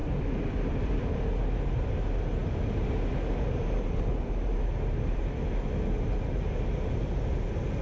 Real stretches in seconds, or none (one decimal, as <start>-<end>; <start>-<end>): 1.0-7.8

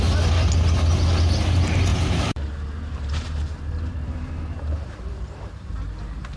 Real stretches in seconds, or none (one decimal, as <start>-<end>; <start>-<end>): 0.0-1.9; 5.7-6.4

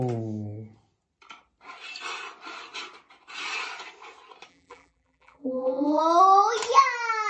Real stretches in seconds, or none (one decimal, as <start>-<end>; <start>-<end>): 0.0-4.5; 6.0-7.3

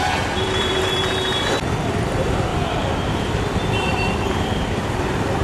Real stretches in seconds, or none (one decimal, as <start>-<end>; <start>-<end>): 2.5-3.4

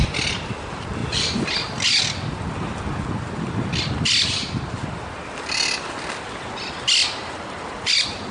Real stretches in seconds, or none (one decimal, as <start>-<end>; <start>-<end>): 0.0-8.3

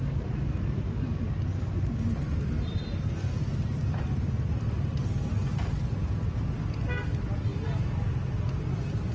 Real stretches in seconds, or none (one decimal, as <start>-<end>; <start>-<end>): 0.0-9.1

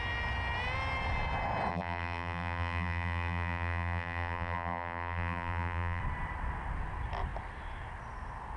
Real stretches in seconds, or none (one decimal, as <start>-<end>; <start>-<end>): 0.0-1.7; 6.0-8.6